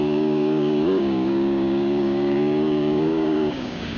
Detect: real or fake fake